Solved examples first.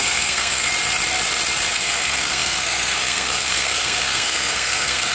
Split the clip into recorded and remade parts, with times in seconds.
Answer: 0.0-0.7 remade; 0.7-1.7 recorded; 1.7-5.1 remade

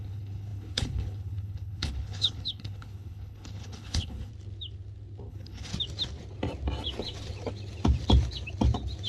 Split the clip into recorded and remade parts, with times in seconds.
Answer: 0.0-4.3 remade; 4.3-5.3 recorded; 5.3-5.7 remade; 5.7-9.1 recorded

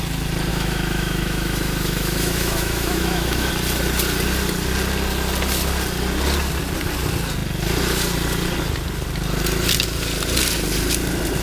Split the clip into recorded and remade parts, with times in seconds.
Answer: 0.0-0.5 recorded; 0.5-3.5 remade; 3.5-11.4 recorded

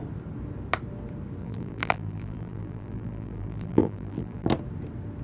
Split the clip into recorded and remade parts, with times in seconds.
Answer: 0.0-1.4 recorded; 1.4-4.5 remade; 4.5-5.2 recorded

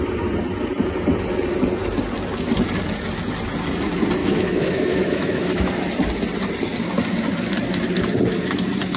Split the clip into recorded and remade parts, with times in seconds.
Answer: 0.0-4.2 recorded; 4.2-5.7 remade; 5.7-9.0 recorded

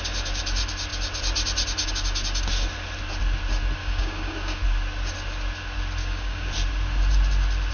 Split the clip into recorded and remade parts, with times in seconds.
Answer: 0.0-3.8 recorded; 3.8-4.6 remade; 4.6-6.0 recorded; 6.0-6.5 remade; 6.5-7.7 recorded

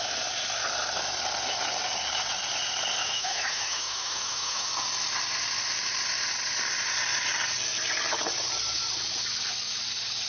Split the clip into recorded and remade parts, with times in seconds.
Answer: 0.0-3.0 recorded; 3.0-4.7 remade; 4.7-10.3 recorded